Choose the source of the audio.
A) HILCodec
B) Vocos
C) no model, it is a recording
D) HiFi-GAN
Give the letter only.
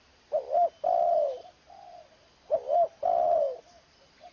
C